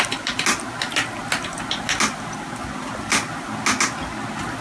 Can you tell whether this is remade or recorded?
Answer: recorded